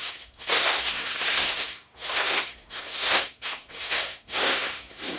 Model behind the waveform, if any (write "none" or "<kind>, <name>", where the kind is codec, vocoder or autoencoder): codec, SNAC